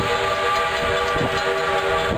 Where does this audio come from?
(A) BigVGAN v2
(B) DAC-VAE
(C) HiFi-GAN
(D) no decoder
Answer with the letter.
D